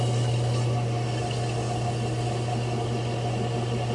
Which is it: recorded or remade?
recorded